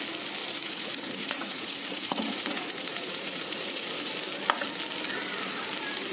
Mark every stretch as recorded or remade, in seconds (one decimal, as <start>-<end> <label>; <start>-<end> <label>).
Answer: 0.0-0.4 recorded; 0.4-4.1 remade; 4.1-6.1 recorded